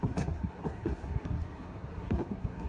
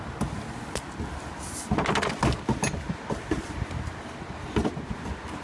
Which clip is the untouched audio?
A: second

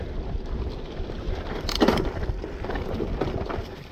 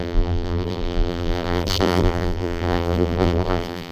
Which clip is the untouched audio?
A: first